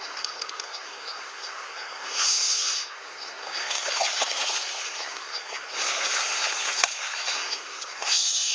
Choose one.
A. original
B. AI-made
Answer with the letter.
B